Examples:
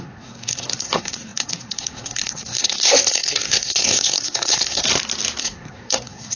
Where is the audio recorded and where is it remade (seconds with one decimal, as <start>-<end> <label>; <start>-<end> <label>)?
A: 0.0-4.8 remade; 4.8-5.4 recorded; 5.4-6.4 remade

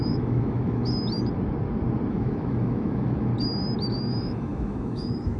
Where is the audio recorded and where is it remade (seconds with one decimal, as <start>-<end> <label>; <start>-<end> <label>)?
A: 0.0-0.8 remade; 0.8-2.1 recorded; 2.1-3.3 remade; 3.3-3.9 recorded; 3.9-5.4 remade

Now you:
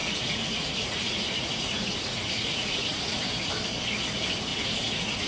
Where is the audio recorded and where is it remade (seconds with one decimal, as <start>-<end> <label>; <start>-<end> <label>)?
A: 0.0-3.2 remade; 3.2-4.5 recorded; 4.5-5.3 remade

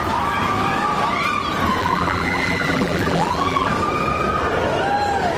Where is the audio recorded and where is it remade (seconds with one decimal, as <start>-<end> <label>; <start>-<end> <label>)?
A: 0.0-1.8 recorded; 1.8-3.7 remade; 3.7-5.4 recorded

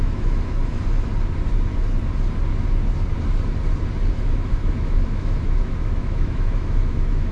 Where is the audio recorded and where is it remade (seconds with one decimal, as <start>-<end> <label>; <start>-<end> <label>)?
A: 0.0-0.6 remade; 0.6-4.1 recorded; 4.1-7.3 remade